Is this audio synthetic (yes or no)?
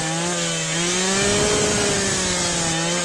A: no